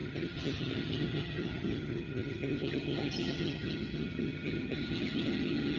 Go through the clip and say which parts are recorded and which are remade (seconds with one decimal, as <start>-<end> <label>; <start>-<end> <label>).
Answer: 0.0-5.8 remade